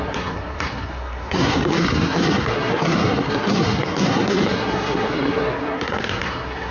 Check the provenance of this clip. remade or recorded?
remade